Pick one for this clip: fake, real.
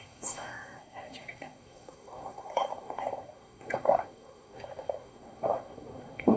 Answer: fake